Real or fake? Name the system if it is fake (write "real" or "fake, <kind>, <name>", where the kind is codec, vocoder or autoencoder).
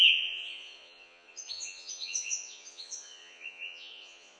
fake, vocoder, Vocos